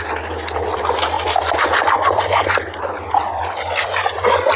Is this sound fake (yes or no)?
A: no